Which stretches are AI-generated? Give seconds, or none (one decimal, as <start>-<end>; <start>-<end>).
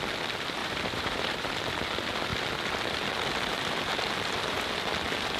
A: 0.6-1.5